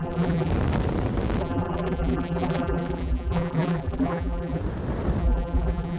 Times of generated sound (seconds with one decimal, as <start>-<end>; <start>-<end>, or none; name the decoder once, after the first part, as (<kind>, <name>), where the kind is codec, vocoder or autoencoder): 0.0-0.5 (vocoder, BigVGAN v2); 1.4-4.6; 5.2-6.0